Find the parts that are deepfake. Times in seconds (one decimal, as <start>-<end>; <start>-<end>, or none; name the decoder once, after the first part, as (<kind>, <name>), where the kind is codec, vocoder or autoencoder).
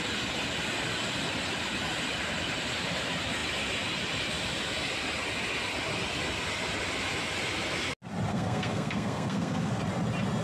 8.3-9.8 (codec, SNAC)